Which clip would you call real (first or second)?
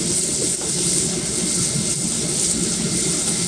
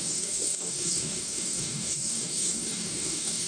first